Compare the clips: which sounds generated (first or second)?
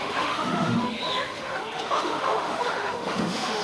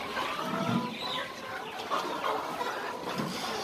first